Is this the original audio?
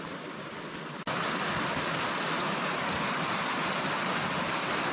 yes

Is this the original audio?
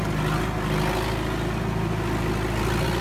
yes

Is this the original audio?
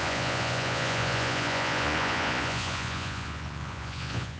no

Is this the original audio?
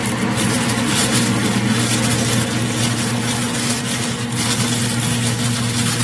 yes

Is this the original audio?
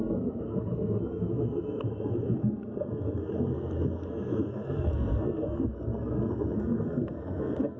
no